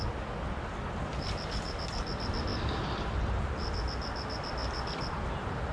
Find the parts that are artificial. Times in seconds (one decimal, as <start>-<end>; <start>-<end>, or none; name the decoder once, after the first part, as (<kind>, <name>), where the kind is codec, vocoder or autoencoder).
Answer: none